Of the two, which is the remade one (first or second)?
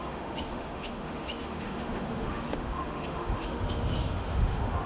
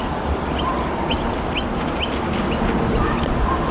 first